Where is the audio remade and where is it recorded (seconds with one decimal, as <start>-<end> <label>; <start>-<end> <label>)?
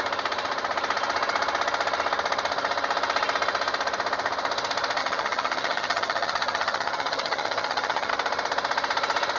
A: 0.0-5.0 recorded; 5.0-8.1 remade; 8.1-9.4 recorded